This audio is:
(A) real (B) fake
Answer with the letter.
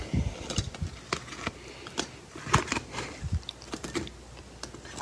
A